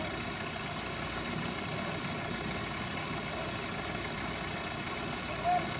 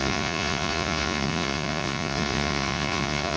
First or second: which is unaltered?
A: first